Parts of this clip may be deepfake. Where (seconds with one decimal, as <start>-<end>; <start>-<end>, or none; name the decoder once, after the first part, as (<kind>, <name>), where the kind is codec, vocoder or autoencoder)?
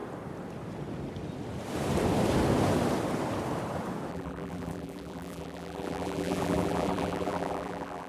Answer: 4.1-8.1 (vocoder, BigVGAN v2)